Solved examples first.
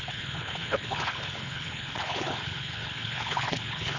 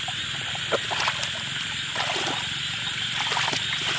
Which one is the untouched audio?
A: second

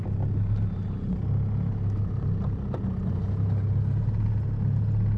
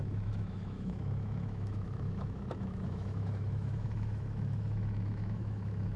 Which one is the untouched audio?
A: first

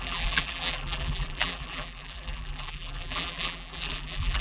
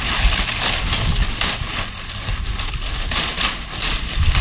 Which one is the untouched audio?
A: second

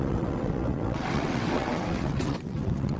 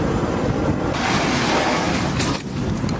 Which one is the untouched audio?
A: second